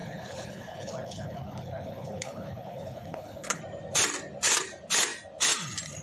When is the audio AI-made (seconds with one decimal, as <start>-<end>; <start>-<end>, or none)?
0.0-3.6